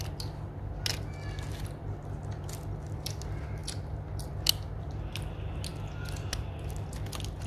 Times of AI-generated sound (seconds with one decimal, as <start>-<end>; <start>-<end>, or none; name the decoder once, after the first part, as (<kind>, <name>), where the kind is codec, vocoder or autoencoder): none